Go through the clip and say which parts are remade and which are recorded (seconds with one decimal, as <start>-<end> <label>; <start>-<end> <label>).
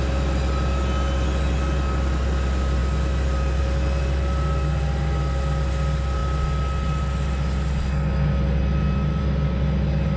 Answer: 0.0-10.2 recorded